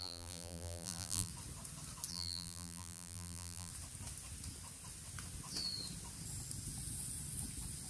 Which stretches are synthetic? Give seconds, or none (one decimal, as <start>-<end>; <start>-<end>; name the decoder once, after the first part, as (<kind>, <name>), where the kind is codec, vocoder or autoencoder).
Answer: 0.0-1.3 (vocoder, BigVGAN v2); 2.1-3.7